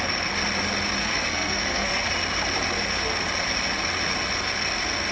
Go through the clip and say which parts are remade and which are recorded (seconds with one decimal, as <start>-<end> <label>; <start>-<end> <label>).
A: 0.0-1.0 recorded; 1.0-2.1 remade; 2.1-5.1 recorded

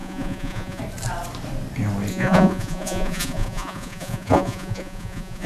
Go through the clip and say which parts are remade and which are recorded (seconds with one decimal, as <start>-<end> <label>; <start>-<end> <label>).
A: 0.0-0.8 remade; 0.8-2.1 recorded; 2.1-5.5 remade

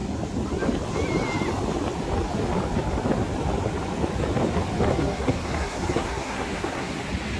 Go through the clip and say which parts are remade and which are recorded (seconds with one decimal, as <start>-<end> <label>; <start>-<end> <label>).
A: 0.0-4.9 recorded; 4.9-7.0 remade; 7.0-7.4 recorded

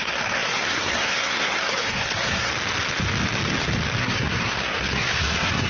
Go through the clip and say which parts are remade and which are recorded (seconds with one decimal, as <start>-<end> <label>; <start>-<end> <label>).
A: 0.0-2.5 remade; 2.5-4.0 recorded; 4.0-5.7 remade

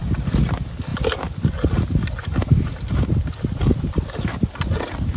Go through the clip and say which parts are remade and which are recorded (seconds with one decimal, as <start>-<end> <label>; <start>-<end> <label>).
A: 0.0-5.2 recorded

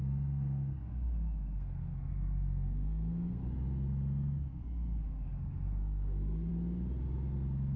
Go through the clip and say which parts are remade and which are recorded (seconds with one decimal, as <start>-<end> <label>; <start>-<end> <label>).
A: 0.0-3.4 remade; 3.4-4.5 recorded; 4.5-6.5 remade; 6.5-7.8 recorded